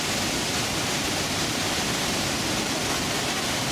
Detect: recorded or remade remade